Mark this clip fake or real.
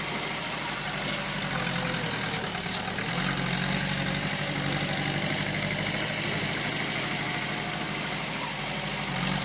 real